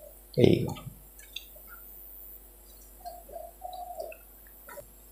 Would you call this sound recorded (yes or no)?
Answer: yes